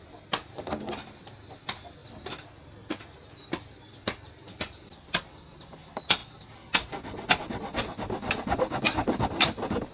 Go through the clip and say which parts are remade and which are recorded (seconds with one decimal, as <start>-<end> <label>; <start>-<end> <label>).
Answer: 0.0-9.0 recorded; 9.0-9.9 remade

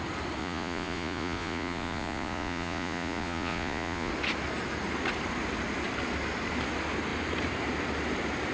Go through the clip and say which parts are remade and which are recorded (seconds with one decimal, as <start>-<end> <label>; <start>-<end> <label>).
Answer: 0.0-0.4 recorded; 0.4-4.1 remade; 4.1-8.5 recorded

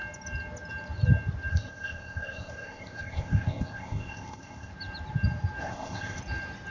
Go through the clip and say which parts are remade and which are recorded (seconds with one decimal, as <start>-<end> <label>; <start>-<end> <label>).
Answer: 0.0-1.5 recorded; 1.5-4.7 remade; 4.7-5.6 recorded; 5.6-6.2 remade; 6.2-6.7 recorded

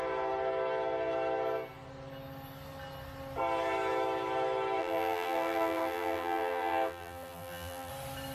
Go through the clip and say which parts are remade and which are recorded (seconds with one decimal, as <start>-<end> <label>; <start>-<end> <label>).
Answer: 0.0-4.8 recorded; 4.8-7.9 remade; 7.9-8.3 recorded

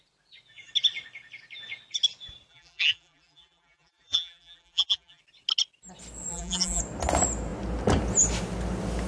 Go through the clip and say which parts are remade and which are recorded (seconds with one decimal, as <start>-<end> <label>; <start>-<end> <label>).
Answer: 0.0-2.5 recorded; 2.5-5.2 remade; 5.2-6.3 recorded; 6.3-6.8 remade; 6.8-9.1 recorded

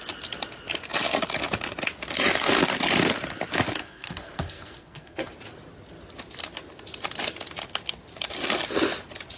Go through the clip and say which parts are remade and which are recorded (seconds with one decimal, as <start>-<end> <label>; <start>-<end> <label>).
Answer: 0.0-3.8 recorded; 3.8-5.3 remade; 5.3-9.4 recorded

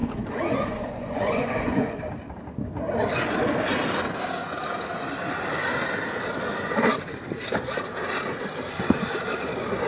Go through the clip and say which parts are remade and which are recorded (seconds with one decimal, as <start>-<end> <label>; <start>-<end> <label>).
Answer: 0.0-1.9 remade; 1.9-9.9 recorded